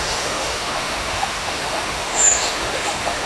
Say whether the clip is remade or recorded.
remade